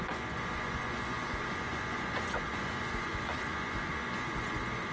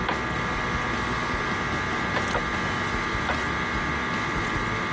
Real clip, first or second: second